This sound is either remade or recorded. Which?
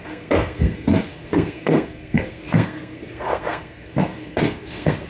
remade